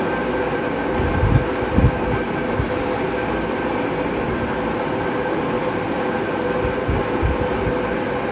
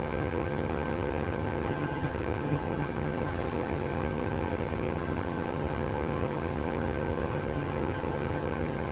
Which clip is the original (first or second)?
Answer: first